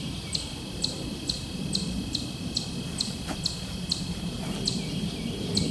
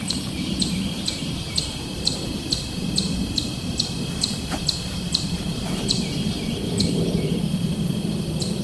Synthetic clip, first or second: second